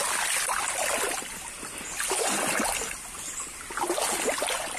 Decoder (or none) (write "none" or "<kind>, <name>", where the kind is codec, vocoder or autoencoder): none